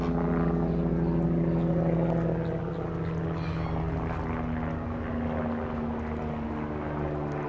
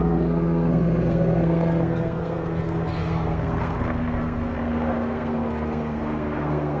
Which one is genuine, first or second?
first